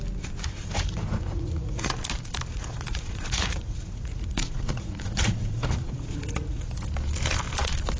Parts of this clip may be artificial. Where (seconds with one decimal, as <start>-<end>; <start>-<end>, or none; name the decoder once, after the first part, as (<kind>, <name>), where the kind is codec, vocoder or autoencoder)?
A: 0.5-2.0 (vocoder, Vocos); 2.5-6.9